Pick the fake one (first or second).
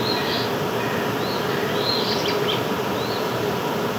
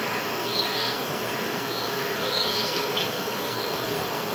second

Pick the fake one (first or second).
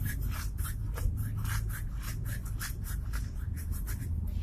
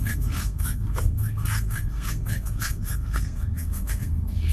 second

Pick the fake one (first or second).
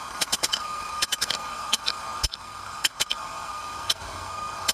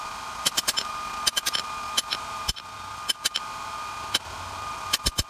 first